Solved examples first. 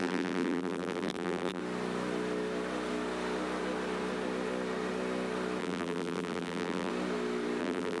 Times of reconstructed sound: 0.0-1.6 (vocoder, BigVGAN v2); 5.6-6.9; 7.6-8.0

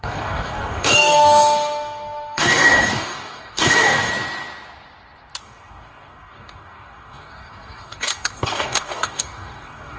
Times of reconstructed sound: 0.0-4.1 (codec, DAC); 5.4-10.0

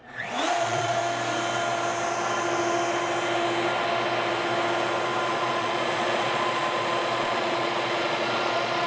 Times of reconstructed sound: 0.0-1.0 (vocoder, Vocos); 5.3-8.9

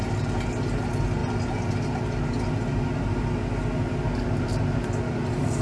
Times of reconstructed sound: none

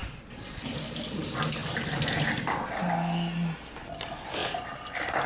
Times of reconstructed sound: 0.0-0.6 (vocoder, Vocos)